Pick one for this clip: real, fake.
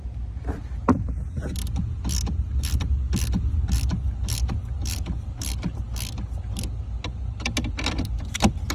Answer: real